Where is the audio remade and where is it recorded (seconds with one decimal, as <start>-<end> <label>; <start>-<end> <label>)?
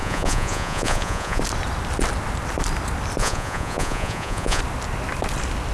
0.0-1.4 remade; 1.4-3.2 recorded; 3.2-4.6 remade; 4.6-5.7 recorded